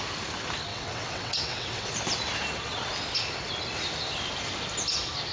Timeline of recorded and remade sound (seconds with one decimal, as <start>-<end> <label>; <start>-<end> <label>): 0.0-0.7 recorded; 0.7-1.9 remade; 1.9-5.3 recorded

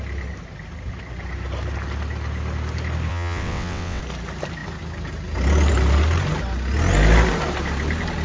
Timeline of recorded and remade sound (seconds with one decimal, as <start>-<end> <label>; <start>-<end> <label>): 0.0-3.1 recorded; 3.1-4.0 remade; 4.0-8.2 recorded

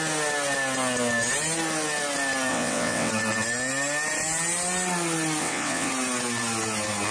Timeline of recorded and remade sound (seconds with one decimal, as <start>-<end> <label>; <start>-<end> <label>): 0.0-2.5 recorded; 2.5-3.1 remade; 3.1-5.4 recorded; 5.4-5.9 remade; 5.9-7.1 recorded

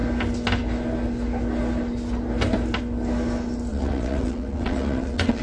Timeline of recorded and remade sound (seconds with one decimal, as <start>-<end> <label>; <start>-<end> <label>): 0.0-3.7 recorded; 3.7-5.4 remade

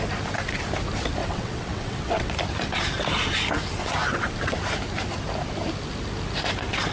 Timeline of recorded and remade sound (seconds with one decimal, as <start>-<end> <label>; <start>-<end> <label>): 0.0-1.2 recorded; 1.2-2.3 remade; 2.3-6.9 recorded

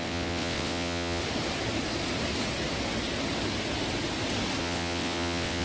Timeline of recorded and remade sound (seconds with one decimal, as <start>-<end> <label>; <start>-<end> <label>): 0.0-1.2 remade; 1.2-4.6 recorded; 4.6-5.6 remade